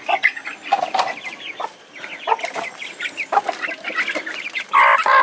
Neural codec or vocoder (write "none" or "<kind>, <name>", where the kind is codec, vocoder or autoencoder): none